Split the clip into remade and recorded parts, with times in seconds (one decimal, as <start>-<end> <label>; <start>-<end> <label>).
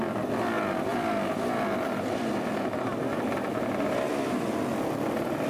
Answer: 0.0-0.9 recorded; 0.9-2.3 remade; 2.3-5.5 recorded